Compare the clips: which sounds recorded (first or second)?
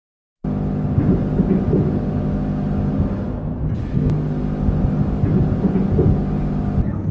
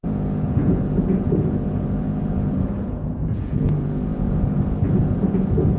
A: first